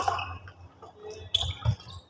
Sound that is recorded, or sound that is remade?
recorded